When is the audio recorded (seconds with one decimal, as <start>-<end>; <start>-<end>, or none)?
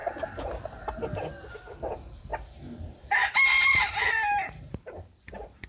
0.0-2.3